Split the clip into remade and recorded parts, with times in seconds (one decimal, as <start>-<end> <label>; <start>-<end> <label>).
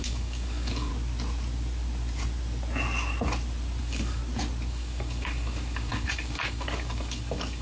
0.0-0.9 remade; 0.9-3.8 recorded; 3.8-4.2 remade; 4.2-4.7 recorded; 4.7-7.6 remade